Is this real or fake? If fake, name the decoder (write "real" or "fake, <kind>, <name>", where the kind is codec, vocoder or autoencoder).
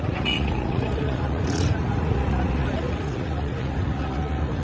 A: fake, vocoder, Vocos